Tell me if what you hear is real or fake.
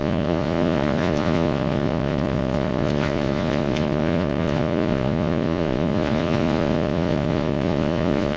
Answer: fake